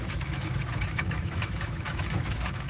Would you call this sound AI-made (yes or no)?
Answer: yes